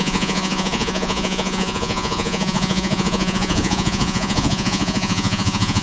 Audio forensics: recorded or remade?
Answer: remade